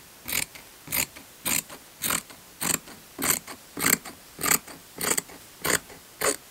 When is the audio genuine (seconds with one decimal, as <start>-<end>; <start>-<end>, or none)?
0.0-0.5; 1.8-4.8; 5.9-6.5